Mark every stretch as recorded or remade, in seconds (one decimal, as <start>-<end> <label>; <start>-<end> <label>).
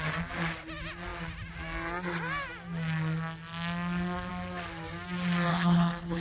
0.0-5.5 recorded; 5.5-6.2 remade